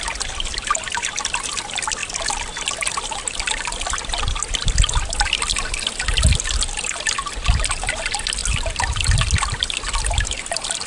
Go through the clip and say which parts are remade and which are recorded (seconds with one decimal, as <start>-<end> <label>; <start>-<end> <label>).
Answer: 0.0-10.9 recorded